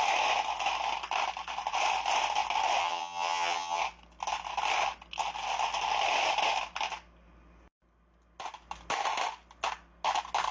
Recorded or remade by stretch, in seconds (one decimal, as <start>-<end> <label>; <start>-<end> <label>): 0.0-2.8 recorded; 2.8-3.8 remade; 3.8-10.5 recorded